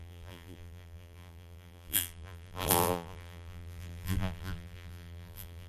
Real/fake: fake